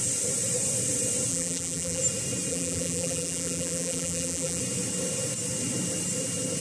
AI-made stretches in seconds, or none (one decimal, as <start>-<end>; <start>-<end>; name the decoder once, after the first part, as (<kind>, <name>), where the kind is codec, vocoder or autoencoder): 1.3-2.0 (vocoder, BigVGAN v2); 2.5-4.6